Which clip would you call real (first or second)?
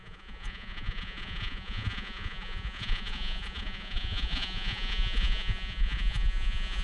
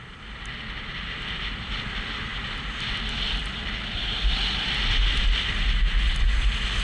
second